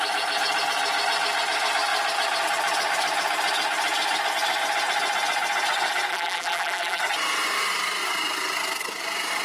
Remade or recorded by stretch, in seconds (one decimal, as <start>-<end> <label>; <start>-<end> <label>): 0.0-6.1 recorded; 6.1-7.0 remade; 7.0-9.4 recorded